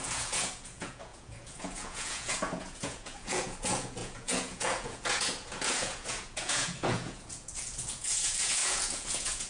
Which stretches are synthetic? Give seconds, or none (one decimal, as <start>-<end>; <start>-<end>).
0.0-9.5